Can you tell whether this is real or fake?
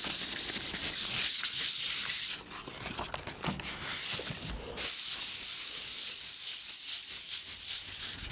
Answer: real